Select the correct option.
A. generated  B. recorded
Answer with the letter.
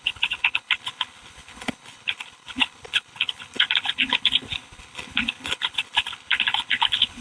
A